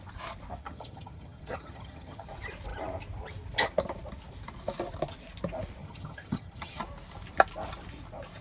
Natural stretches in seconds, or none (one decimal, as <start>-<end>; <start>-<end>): 0.0-0.6; 2.3-5.8; 6.8-8.4